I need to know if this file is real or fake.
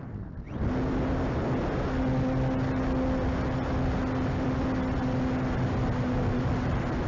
real